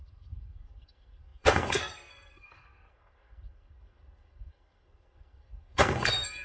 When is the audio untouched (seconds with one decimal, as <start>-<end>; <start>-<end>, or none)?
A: none